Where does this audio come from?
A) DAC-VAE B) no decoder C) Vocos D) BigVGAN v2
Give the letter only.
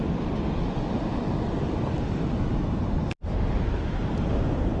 B